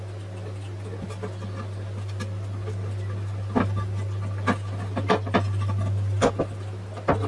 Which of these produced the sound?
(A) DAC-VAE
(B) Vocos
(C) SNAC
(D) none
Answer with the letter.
D